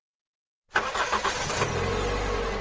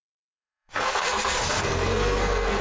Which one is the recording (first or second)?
first